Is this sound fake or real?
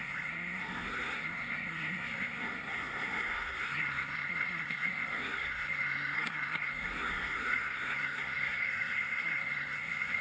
fake